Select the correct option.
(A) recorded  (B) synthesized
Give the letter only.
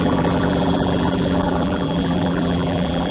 B